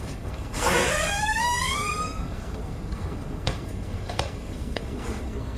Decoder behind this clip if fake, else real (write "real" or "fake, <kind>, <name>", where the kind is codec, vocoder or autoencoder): fake, codec, SNAC